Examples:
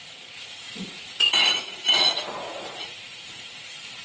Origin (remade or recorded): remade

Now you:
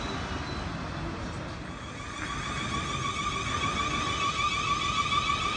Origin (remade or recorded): recorded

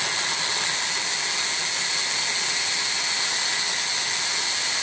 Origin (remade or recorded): recorded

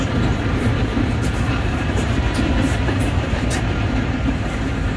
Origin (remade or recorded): remade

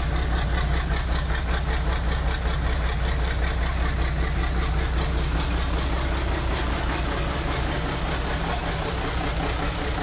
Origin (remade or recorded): recorded